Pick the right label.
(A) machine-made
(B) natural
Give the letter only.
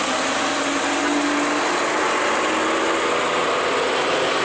B